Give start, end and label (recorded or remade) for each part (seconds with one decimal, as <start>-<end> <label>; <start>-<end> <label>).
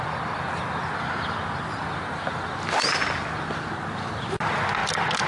0.0-5.3 recorded